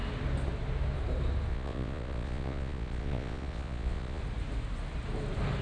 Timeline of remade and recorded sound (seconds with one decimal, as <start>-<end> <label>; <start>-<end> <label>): 0.0-1.5 recorded; 1.5-4.2 remade; 4.2-5.6 recorded